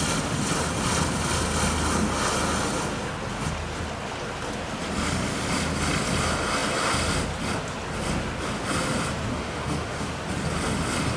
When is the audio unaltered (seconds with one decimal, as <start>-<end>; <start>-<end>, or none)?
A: 0.0-9.3; 10.1-11.2